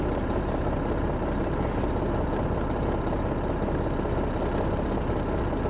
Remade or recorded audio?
recorded